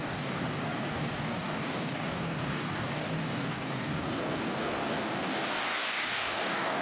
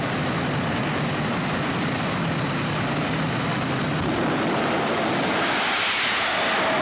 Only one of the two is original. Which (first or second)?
second